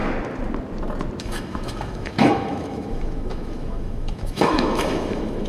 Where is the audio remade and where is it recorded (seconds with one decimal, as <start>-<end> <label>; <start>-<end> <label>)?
0.0-1.2 recorded; 1.2-5.5 remade

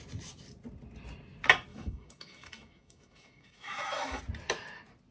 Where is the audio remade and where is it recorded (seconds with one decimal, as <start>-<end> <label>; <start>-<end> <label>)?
0.0-1.7 recorded; 1.7-4.2 remade; 4.2-5.1 recorded

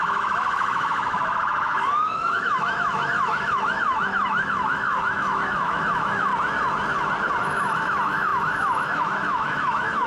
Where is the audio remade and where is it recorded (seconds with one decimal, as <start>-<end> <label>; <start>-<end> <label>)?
0.0-6.3 remade; 6.3-7.4 recorded; 7.4-10.1 remade

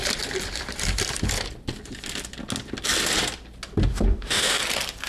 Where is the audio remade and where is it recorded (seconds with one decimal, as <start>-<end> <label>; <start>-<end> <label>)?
0.0-3.9 recorded; 3.9-4.6 remade; 4.6-5.1 recorded

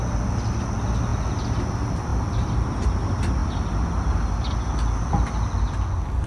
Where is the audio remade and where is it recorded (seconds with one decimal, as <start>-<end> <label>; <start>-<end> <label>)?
0.0-6.3 recorded

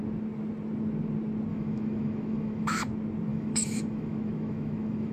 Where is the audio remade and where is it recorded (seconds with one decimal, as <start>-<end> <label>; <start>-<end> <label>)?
0.0-1.5 recorded; 1.5-2.8 remade; 2.8-3.3 recorded; 3.3-5.1 remade